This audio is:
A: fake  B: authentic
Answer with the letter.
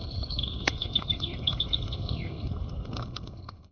A